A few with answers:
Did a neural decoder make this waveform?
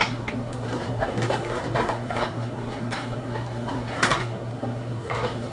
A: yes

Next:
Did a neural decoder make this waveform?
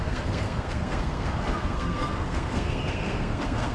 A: yes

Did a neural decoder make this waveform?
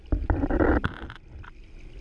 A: no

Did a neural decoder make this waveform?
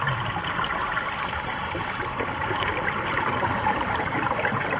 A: yes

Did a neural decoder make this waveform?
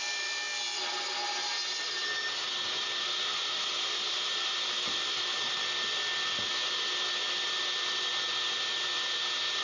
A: no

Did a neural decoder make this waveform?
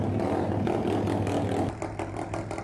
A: no